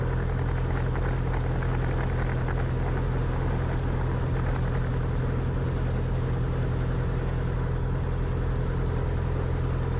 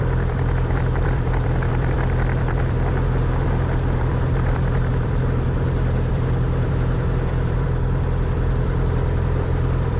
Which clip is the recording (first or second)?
first